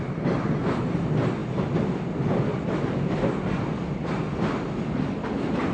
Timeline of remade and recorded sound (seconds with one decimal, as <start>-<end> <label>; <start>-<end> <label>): 0.0-5.7 recorded